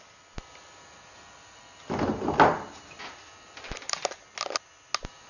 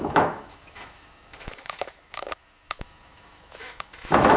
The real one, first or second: first